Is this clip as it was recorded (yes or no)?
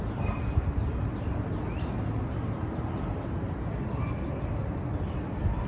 yes